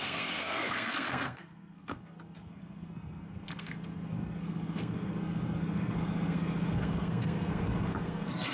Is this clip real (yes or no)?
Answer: no